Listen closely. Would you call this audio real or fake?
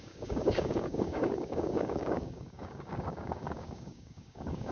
fake